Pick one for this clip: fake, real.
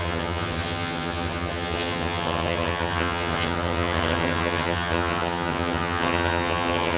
fake